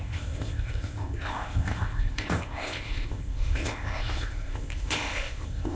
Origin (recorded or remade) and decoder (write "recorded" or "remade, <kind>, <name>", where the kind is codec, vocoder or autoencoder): remade, codec, ZipCodec